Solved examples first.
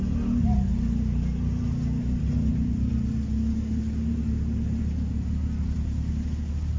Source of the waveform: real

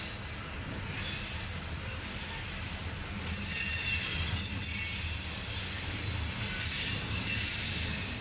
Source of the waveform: real